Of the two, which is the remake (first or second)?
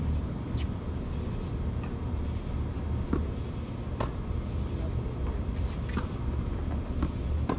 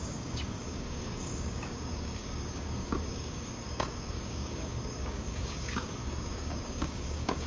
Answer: second